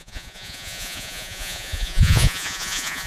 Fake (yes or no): yes